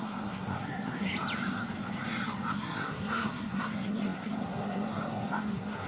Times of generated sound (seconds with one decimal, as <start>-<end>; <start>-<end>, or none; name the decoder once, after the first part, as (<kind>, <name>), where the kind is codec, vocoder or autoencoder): 0.0-1.1 (codec, SNAC); 2.5-5.9